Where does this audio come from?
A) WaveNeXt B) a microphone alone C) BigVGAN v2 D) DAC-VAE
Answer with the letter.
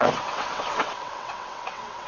A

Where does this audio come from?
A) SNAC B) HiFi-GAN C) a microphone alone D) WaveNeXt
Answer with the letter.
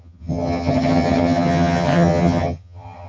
B